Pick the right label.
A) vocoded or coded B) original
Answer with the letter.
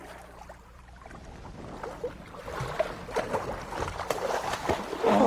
B